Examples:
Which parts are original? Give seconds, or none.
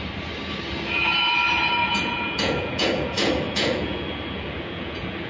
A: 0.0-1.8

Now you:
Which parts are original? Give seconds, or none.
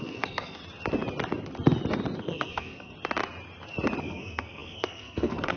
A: 0.6-2.2; 2.9-4.0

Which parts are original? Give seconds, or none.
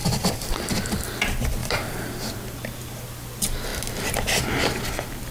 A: 0.7-1.6; 2.3-5.3